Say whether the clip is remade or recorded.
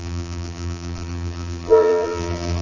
remade